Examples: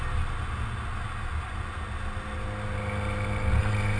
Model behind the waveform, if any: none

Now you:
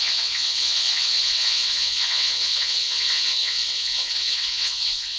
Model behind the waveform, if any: vocoder, WaveNeXt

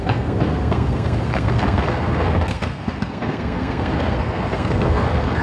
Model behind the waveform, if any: codec, SNAC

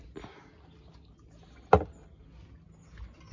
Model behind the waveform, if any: none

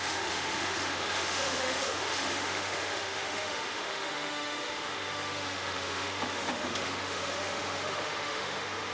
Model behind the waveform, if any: autoencoder, DAC-VAE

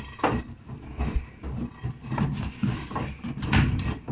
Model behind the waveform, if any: none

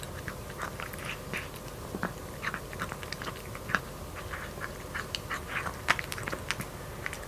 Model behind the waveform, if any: none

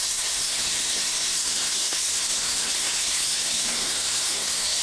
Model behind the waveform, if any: codec, SNAC